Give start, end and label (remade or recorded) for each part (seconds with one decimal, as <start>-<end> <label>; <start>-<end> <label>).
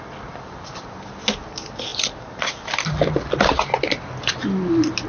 0.0-5.1 recorded